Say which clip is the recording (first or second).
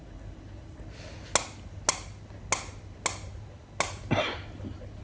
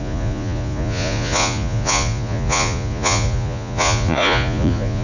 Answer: first